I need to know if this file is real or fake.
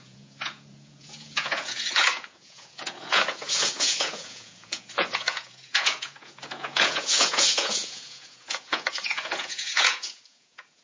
fake